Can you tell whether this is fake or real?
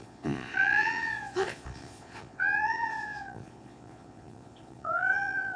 fake